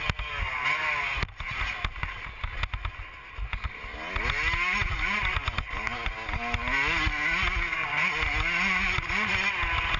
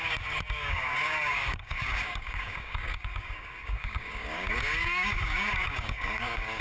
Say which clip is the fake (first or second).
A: second